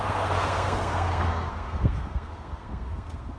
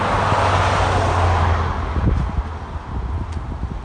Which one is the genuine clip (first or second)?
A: second